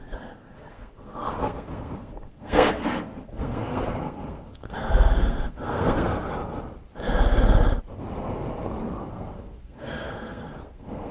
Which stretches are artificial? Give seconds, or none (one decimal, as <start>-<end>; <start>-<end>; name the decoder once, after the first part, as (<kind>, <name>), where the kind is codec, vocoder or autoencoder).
0.0-6.3 (codec, SNAC); 9.1-11.1